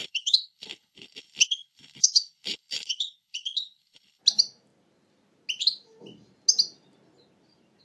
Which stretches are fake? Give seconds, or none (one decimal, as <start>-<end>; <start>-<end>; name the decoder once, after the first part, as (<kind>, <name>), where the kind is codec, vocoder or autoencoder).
0.0-4.2 (codec, HILCodec)